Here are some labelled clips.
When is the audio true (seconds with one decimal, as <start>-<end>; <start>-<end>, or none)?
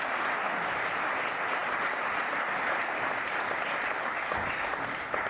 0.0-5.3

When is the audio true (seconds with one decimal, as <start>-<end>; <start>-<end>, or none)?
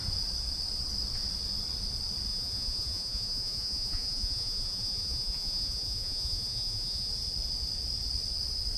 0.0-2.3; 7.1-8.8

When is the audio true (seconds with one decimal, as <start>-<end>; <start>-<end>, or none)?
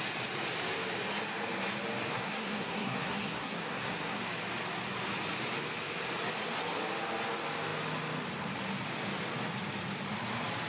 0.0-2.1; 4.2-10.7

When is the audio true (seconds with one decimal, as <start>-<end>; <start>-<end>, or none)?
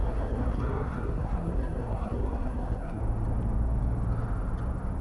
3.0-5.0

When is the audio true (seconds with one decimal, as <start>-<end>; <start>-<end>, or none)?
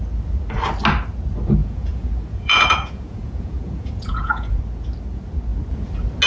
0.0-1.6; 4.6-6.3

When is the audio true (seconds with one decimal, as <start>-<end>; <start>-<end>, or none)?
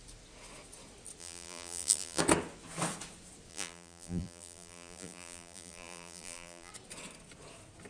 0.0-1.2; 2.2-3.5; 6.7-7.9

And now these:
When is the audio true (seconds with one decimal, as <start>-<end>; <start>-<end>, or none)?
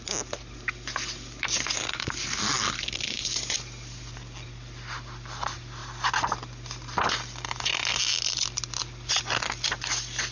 0.0-10.3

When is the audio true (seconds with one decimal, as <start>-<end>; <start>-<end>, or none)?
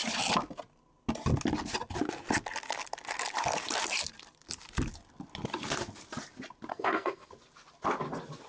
0.0-6.7; 7.3-8.5